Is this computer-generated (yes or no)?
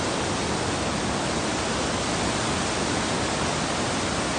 no